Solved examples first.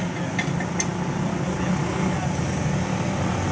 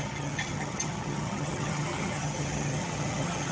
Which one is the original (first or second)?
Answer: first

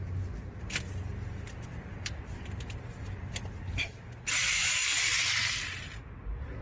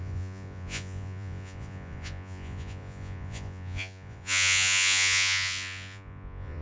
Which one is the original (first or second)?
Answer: first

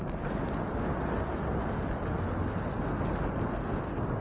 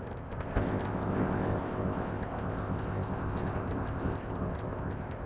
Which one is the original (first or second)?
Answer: first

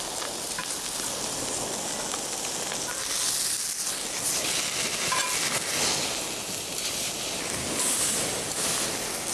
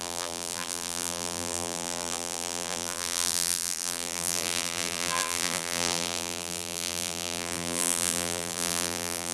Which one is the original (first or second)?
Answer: first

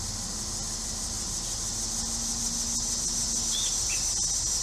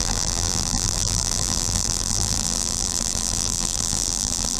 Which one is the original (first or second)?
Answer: first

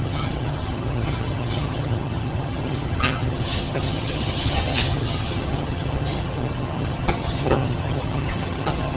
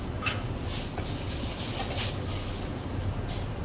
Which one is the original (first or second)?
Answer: second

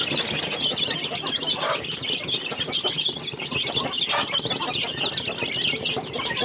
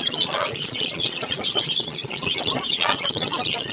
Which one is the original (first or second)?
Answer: first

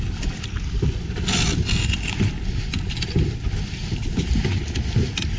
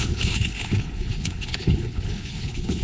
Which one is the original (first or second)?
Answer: first